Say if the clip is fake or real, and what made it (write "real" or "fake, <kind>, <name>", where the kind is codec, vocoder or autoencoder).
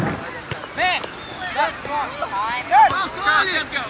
real